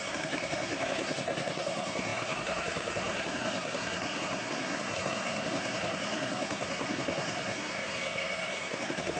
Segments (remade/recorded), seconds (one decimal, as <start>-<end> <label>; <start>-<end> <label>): 0.0-9.2 remade

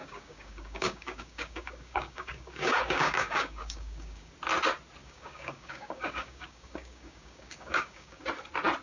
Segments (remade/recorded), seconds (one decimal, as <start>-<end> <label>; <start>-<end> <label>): 0.0-4.3 remade; 4.3-5.0 recorded; 5.0-8.2 remade; 8.2-8.8 recorded

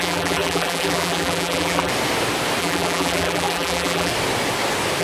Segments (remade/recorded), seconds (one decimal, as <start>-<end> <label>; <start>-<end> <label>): 0.0-1.9 remade; 1.9-2.6 recorded; 2.6-4.1 remade; 4.1-5.0 recorded

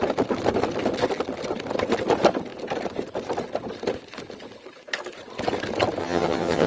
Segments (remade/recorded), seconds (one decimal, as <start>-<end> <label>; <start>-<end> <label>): 0.0-6.0 recorded; 6.0-6.7 remade

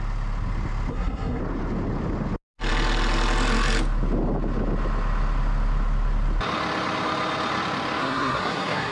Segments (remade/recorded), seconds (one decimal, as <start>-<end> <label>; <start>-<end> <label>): 0.0-0.9 recorded; 0.9-1.4 remade; 1.4-8.0 recorded; 8.0-8.9 remade